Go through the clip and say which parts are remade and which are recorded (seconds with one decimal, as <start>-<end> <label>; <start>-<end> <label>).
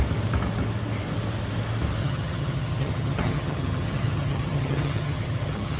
0.0-2.0 recorded; 2.0-5.8 remade